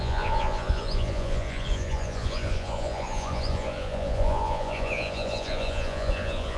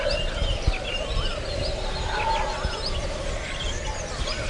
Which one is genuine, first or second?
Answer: second